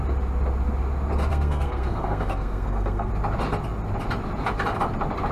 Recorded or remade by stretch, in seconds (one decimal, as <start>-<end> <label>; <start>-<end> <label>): 0.0-1.3 recorded; 1.3-3.1 remade; 3.1-5.3 recorded